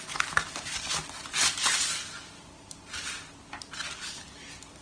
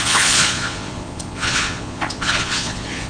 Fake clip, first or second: second